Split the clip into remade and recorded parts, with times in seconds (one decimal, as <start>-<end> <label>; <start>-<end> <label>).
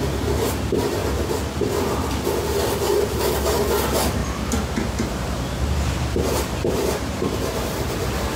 0.0-4.2 recorded; 4.2-7.9 remade; 7.9-8.4 recorded